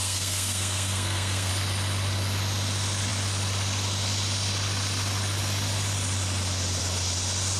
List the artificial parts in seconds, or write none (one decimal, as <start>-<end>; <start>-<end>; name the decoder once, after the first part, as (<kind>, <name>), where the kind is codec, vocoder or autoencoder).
0.0-1.5 (codec, SNAC)

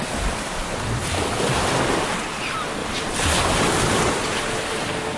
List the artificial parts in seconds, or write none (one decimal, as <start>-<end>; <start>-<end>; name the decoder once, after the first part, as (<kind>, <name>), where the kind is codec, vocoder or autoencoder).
none

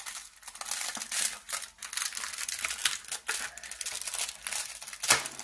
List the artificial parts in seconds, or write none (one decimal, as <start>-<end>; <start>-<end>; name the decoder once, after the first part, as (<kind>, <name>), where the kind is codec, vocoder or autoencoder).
none

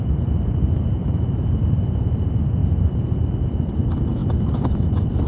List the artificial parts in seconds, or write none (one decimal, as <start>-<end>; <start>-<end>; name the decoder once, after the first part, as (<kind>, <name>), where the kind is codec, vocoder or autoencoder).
1.0-1.7 (vocoder, BigVGAN v2); 2.6-3.7

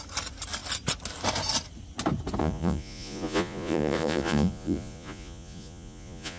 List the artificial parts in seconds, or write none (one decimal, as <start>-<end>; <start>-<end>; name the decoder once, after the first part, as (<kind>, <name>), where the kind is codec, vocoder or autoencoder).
2.4-6.4 (vocoder, Vocos)

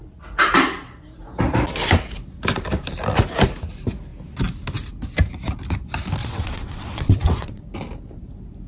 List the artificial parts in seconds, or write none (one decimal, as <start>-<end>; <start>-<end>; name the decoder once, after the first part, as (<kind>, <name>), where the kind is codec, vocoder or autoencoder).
6.2-7.6 (vocoder, WaveNeXt)